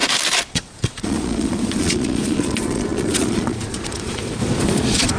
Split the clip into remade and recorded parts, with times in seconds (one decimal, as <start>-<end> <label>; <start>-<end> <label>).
0.0-0.5 recorded; 0.5-5.2 remade